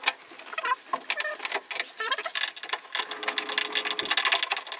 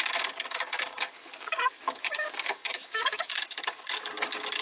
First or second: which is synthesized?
second